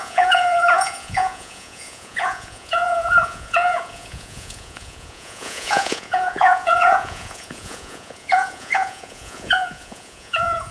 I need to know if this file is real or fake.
fake